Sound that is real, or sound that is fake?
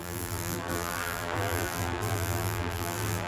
fake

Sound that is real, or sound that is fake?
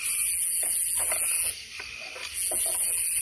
real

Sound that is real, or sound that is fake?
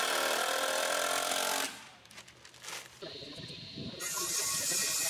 real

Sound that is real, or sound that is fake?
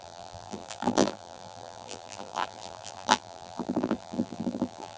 fake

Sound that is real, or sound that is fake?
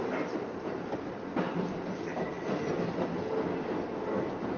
real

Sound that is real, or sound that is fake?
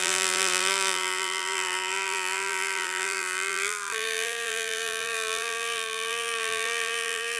fake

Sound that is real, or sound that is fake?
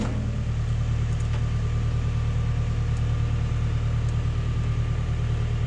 real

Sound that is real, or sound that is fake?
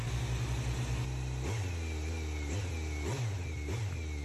real